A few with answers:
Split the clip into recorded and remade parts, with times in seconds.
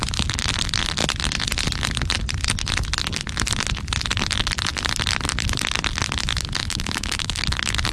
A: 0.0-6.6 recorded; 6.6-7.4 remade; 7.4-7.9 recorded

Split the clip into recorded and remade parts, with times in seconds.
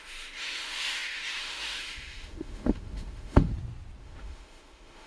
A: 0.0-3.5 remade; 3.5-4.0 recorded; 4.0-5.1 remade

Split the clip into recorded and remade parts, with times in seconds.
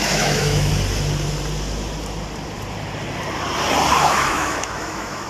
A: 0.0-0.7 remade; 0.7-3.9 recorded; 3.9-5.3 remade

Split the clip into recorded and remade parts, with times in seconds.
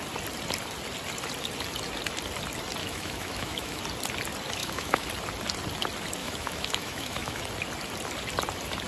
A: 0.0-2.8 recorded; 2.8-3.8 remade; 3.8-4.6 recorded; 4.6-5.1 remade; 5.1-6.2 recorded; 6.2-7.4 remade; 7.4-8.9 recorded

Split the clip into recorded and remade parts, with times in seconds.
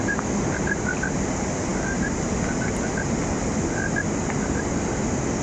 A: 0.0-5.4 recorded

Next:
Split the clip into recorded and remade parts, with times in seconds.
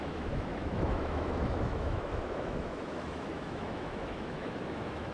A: 0.0-5.1 remade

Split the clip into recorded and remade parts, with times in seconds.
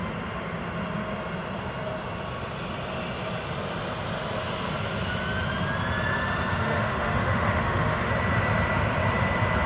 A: 0.0-6.6 recorded; 6.6-8.1 remade; 8.1-9.7 recorded